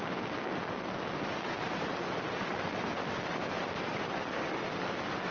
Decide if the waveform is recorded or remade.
recorded